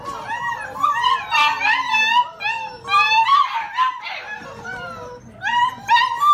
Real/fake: real